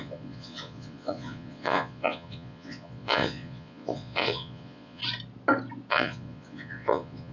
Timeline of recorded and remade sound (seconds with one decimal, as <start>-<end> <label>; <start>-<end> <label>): 0.0-5.0 remade; 5.0-5.9 recorded; 5.9-7.3 remade